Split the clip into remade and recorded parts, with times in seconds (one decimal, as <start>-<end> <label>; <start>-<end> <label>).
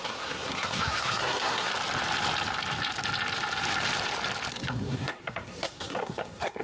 0.0-1.7 remade; 1.7-4.5 recorded; 4.5-6.6 remade